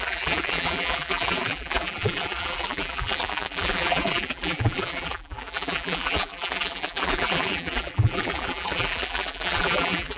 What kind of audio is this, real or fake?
fake